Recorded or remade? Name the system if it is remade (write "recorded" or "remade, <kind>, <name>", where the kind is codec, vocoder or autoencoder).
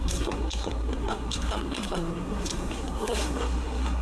remade, codec, SNAC